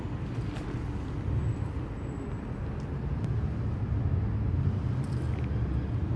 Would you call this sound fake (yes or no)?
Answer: no